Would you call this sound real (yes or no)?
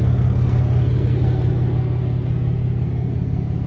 no